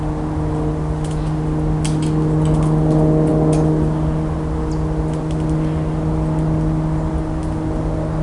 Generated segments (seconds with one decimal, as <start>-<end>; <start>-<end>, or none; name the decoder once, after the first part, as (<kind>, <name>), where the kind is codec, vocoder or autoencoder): none